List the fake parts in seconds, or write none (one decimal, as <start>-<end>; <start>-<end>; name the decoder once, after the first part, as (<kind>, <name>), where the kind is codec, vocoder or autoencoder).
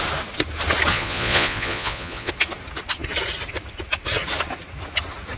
0.9-2.3 (vocoder, Vocos)